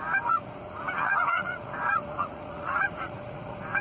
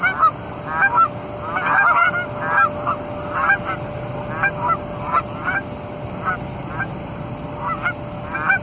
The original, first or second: second